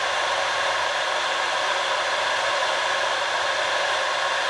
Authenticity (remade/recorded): recorded